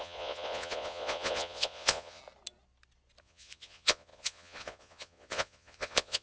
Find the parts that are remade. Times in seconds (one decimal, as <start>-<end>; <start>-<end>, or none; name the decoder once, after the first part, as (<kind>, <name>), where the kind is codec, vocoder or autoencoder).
0.0-2.2 (vocoder, Vocos); 3.2-6.2